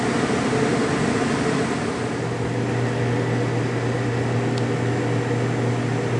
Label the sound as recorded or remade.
recorded